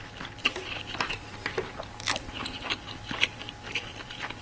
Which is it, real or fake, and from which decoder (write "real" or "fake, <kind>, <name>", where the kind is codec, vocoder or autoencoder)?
fake, vocoder, BigVGAN v2